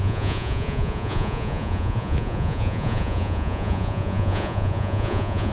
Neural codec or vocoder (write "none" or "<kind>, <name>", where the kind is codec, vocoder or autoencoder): vocoder, Vocos